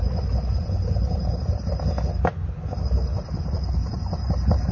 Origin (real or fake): real